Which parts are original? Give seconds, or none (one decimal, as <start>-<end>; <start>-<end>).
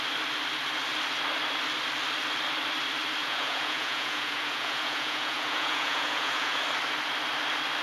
0.0-3.2; 6.6-7.8